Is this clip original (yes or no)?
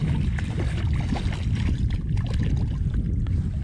yes